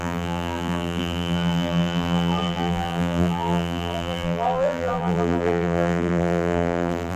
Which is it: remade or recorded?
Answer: remade